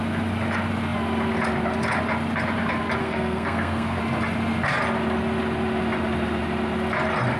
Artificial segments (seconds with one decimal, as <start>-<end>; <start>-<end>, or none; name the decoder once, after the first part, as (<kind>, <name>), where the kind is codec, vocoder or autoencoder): 3.0-4.0 (codec, SNAC)